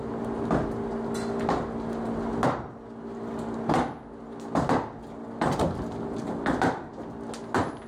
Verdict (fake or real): real